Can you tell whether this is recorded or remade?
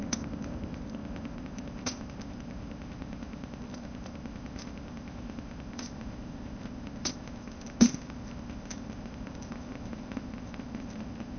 remade